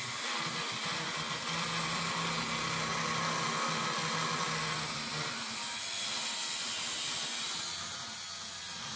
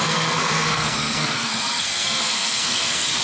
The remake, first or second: second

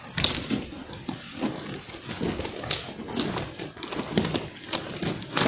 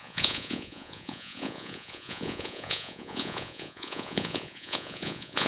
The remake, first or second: second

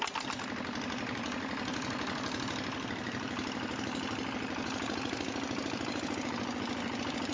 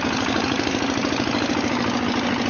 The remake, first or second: first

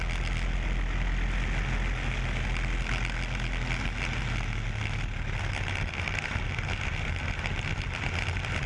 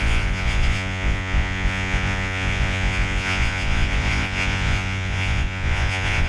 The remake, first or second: second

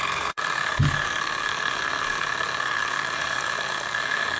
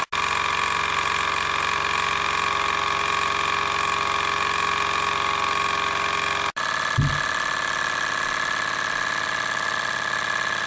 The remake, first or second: first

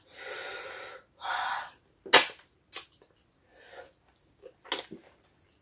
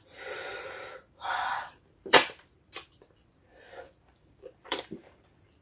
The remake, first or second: second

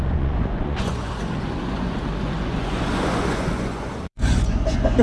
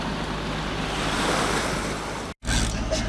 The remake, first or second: first